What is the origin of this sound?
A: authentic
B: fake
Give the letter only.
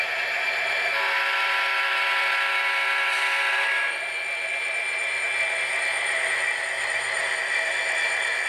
A